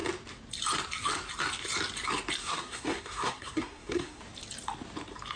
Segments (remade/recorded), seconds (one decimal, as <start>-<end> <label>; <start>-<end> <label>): 0.0-2.4 recorded; 2.4-4.2 remade; 4.2-5.4 recorded